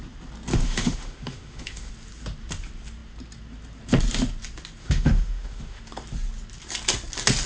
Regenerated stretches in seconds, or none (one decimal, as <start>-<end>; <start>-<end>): 0.5-1.9; 4.8-5.8